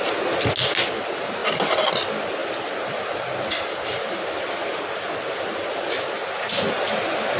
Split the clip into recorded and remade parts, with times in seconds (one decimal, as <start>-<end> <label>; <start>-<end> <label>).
0.0-7.4 recorded